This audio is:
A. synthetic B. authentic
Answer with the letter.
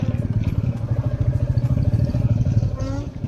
B